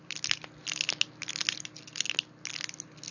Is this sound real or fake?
real